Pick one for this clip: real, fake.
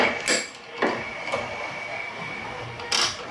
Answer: real